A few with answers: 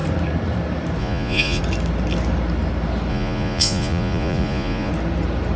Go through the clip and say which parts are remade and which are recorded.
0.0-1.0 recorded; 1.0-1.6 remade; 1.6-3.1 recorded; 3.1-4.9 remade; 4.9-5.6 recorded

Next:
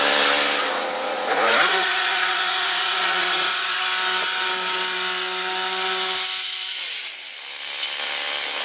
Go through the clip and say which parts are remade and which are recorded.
0.0-0.6 recorded; 0.6-3.8 remade; 3.8-8.6 recorded

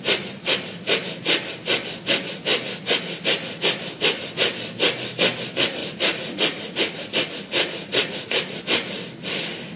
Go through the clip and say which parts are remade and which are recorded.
0.0-5.8 recorded; 5.8-8.6 remade; 8.6-9.8 recorded

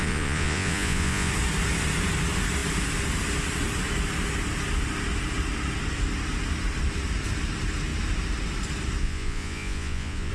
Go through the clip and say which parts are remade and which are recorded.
0.0-1.3 remade; 1.3-9.0 recorded; 9.0-10.3 remade